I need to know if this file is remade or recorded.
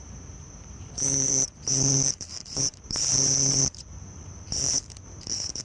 remade